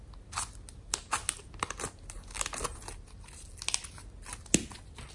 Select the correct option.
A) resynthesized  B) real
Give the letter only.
B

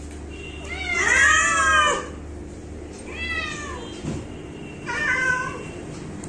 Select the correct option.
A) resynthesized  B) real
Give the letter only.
B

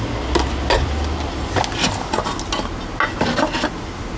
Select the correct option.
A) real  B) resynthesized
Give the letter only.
A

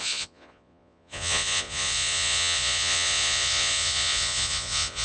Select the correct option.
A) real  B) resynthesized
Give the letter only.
B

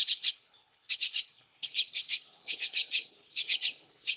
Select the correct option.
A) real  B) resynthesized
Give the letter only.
B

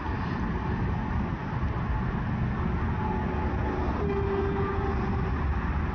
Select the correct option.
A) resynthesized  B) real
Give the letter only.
B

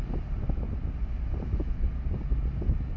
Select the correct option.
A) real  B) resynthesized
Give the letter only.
A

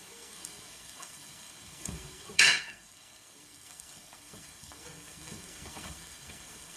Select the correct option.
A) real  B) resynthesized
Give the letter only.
B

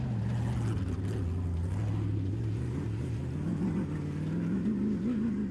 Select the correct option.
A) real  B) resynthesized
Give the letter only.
A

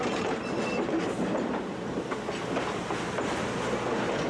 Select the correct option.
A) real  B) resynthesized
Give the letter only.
A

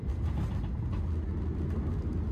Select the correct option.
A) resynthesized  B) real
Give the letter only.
B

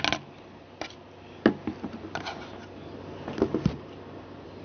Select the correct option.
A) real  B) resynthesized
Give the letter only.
A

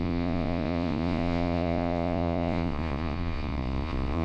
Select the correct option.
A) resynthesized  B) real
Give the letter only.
A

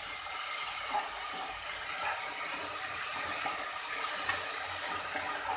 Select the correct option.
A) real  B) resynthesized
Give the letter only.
A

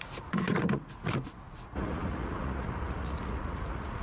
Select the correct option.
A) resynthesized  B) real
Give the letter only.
A